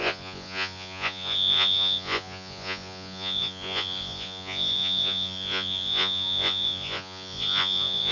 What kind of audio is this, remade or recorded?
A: remade